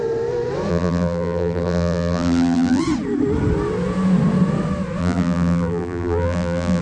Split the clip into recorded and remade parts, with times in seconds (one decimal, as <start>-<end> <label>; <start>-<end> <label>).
0.0-0.7 recorded; 0.7-2.8 remade; 2.8-5.0 recorded; 5.0-6.8 remade